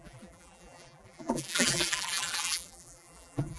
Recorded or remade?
remade